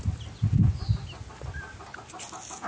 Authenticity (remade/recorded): recorded